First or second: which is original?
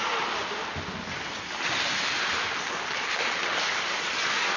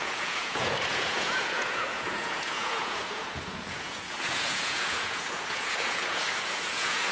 first